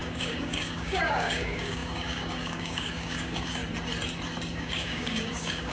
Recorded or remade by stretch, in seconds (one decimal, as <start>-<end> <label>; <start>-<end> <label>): 0.0-3.6 remade; 3.6-4.5 recorded; 4.5-5.7 remade